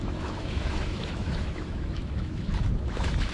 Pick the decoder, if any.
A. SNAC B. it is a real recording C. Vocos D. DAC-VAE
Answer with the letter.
D